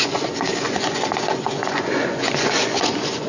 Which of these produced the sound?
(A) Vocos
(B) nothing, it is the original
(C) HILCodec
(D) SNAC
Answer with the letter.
A